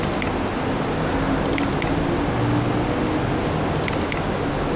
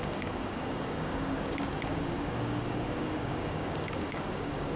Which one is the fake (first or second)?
second